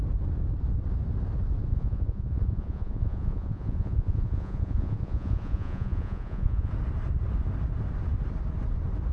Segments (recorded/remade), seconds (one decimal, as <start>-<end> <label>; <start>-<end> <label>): 0.0-1.7 recorded; 1.7-6.7 remade; 6.7-9.1 recorded